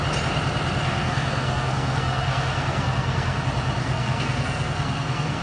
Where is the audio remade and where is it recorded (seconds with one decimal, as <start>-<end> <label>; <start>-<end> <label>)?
0.0-0.8 recorded; 0.8-3.4 remade; 3.4-3.8 recorded; 3.8-5.4 remade